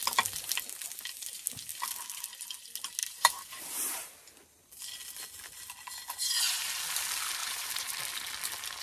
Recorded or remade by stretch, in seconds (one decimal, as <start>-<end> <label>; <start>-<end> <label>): 0.0-3.0 recorded; 3.0-3.6 remade; 3.6-7.4 recorded; 7.4-8.0 remade; 8.0-8.8 recorded